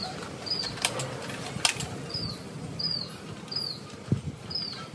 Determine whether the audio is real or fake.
real